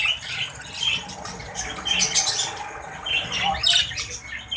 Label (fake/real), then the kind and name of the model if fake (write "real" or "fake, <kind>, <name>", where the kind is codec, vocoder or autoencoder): real